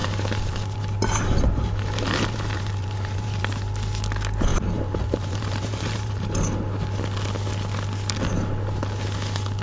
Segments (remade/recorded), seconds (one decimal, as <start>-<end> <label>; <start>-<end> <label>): 0.0-3.4 remade; 3.4-4.5 recorded; 4.5-6.7 remade; 6.7-9.6 recorded

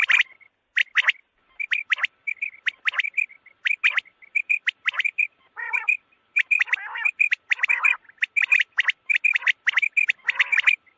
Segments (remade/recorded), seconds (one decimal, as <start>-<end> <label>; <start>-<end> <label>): 0.0-4.3 recorded; 4.3-7.5 remade; 7.5-11.0 recorded

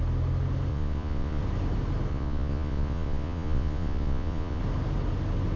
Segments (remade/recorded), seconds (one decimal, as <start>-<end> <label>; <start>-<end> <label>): 0.0-0.7 recorded; 0.7-1.4 remade; 1.4-2.1 recorded; 2.1-4.6 remade; 4.6-5.6 recorded

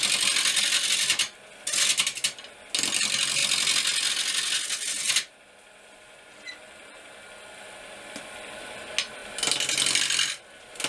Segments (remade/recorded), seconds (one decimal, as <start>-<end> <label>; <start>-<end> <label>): 0.0-10.9 recorded

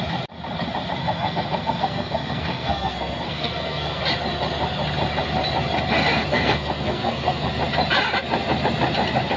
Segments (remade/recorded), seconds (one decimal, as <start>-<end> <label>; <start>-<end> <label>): 0.0-1.0 recorded; 1.0-4.0 remade; 4.0-6.3 recorded; 6.3-7.5 remade; 7.5-9.4 recorded